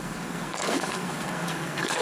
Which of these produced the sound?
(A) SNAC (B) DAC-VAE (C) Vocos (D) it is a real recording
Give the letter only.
A